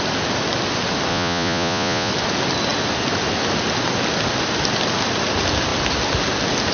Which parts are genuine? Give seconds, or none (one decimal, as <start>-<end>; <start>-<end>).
0.0-1.1; 2.1-6.7